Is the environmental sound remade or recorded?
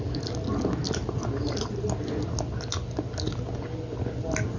recorded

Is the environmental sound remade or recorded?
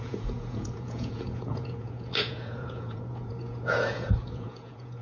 remade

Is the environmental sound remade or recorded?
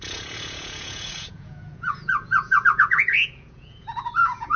remade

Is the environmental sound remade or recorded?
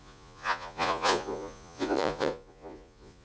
remade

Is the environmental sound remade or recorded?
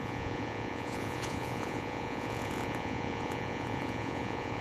remade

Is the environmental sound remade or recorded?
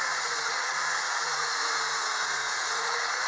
remade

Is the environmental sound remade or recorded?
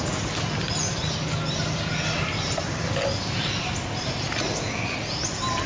recorded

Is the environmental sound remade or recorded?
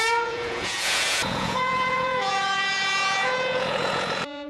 remade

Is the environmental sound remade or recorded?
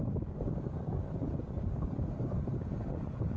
recorded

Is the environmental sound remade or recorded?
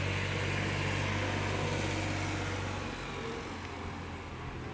recorded